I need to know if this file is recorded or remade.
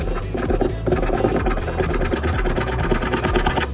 recorded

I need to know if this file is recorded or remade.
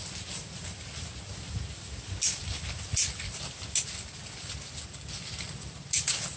recorded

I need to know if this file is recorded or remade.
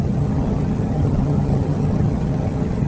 remade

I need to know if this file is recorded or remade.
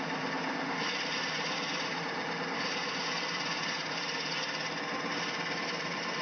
recorded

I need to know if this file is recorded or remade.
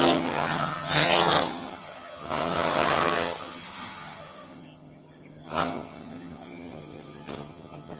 remade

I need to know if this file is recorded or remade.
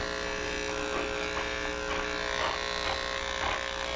recorded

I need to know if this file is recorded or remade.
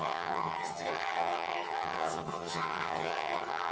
remade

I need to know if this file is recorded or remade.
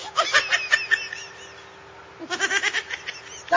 recorded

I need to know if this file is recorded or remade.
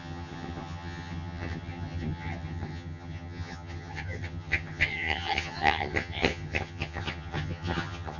remade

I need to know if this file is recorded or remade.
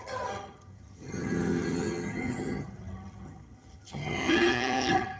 remade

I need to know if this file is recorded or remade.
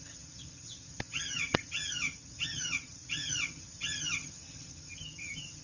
remade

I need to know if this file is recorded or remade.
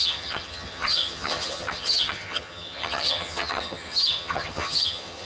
remade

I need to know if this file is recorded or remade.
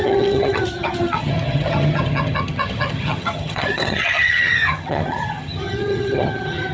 remade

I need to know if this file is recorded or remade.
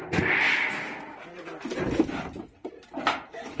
recorded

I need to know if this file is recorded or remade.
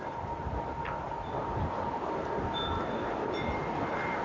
recorded